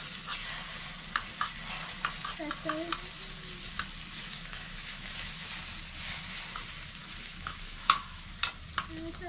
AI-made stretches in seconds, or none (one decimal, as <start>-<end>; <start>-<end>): 4.2-5.5; 7.0-8.3